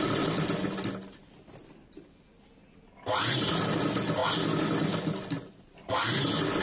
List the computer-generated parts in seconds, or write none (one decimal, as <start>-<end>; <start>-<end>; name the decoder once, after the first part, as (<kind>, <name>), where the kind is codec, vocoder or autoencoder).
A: none